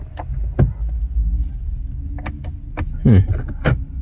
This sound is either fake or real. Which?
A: real